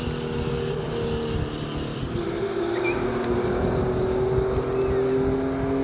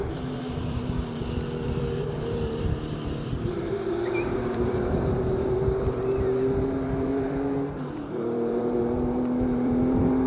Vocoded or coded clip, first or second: second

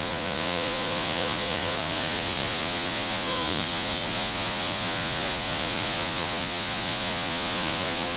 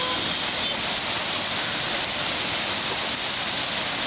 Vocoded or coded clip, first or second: first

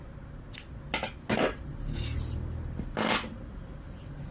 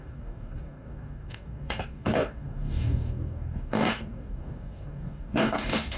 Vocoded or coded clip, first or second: second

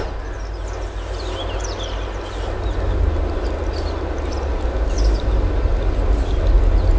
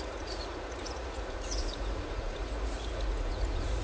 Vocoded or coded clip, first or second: second